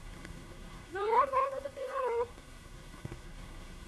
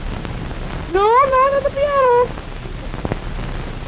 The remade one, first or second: first